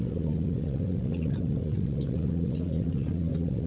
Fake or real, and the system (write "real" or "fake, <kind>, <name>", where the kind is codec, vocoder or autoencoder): fake, vocoder, WaveNeXt